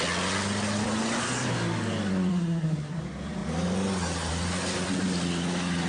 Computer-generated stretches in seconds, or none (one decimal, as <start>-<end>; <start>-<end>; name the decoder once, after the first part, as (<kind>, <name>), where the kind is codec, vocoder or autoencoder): 2.3-3.0 (codec, SNAC)